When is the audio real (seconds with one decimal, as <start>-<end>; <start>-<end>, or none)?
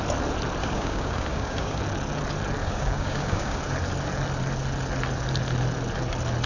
0.0-0.6; 1.8-2.6; 3.6-6.5